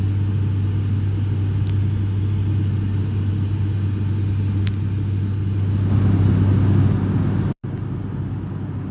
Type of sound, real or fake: real